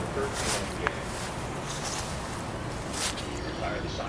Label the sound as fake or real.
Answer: real